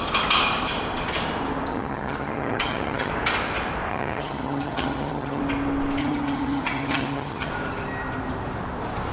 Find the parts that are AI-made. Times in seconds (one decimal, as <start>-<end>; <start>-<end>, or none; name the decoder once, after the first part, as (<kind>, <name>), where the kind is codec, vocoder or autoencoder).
1.7-3.1 (vocoder, HiFi-GAN); 3.9-5.4; 6.0-7.5